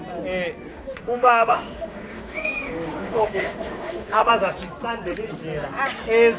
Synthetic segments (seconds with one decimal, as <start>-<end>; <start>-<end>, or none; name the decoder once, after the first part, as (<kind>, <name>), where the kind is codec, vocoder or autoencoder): 0.7-4.3 (autoencoder, DAC-VAE)